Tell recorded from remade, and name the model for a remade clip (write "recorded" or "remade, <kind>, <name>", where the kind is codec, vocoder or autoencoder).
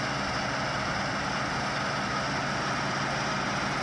recorded